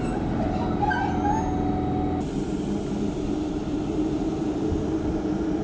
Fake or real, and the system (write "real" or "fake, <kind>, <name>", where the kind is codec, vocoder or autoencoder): real